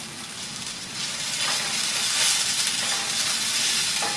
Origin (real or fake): real